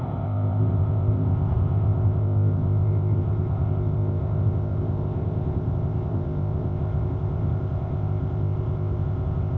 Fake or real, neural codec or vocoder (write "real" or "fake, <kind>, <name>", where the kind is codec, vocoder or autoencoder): fake, codec, ZipCodec